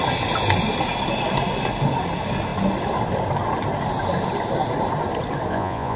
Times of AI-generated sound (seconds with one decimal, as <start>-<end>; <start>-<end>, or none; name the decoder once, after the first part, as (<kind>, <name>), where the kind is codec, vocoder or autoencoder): 5.5-6.0 (vocoder, Vocos)